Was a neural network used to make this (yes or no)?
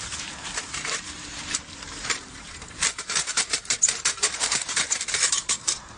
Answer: yes